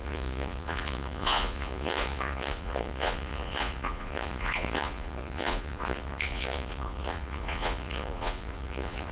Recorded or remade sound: remade